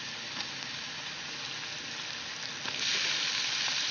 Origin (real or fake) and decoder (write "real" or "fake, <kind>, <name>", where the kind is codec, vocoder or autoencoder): fake, vocoder, BigVGAN v2